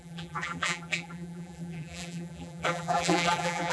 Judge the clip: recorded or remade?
remade